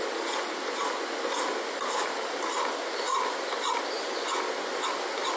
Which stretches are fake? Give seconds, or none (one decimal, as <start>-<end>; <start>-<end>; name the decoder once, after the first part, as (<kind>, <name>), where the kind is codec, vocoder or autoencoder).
none